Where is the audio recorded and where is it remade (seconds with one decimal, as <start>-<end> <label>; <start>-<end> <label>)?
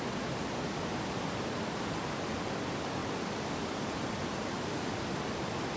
0.0-5.8 remade